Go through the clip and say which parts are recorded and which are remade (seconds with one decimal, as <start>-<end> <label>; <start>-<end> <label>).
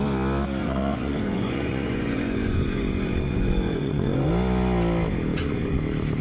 0.0-0.6 recorded; 0.6-4.3 remade; 4.3-5.3 recorded; 5.3-5.8 remade; 5.8-6.2 recorded